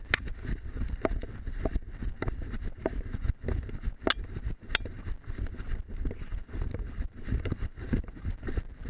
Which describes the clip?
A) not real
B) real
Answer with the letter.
B